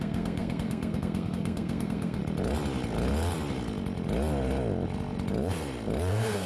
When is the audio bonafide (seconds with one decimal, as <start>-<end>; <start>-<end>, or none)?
2.2-6.1